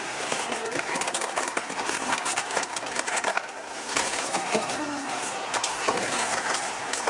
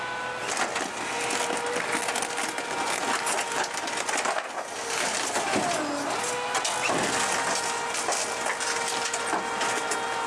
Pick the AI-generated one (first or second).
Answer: first